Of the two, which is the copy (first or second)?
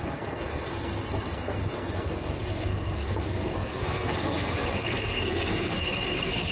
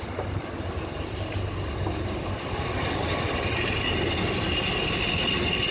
first